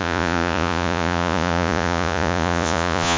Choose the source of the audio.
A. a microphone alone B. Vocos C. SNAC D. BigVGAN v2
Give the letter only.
B